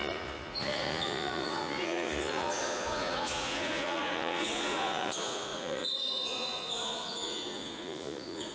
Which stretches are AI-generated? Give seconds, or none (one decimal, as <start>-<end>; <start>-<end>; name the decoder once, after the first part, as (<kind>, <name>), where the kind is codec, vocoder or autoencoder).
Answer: 0.0-8.5 (vocoder, Vocos)